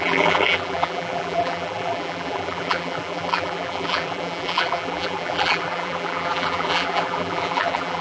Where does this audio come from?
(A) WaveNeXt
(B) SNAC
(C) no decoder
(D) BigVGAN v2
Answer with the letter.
D